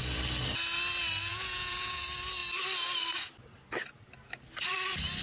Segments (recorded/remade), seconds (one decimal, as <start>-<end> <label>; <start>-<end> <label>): 0.0-1.3 recorded; 1.3-2.0 remade; 2.0-5.2 recorded